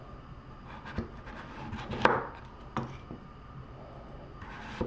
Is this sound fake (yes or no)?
no